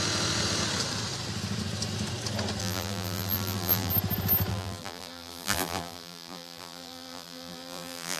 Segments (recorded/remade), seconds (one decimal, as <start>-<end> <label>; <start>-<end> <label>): 0.0-2.6 recorded; 2.6-3.9 remade; 3.9-4.5 recorded; 4.5-8.2 remade